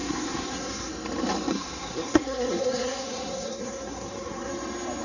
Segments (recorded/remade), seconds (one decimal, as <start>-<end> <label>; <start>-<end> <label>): 0.0-0.9 remade; 0.9-1.5 recorded; 1.5-4.5 remade; 4.5-5.0 recorded